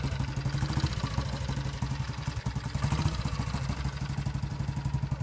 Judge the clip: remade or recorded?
recorded